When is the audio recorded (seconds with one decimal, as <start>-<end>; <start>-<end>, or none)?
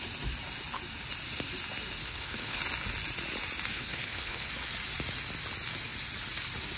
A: 0.0-2.0; 2.6-3.7; 4.5-6.8